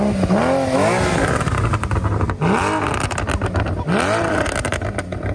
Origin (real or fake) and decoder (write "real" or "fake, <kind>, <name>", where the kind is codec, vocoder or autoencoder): real